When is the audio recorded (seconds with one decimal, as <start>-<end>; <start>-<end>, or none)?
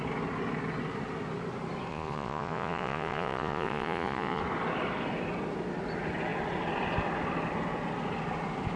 0.0-1.9; 4.4-8.8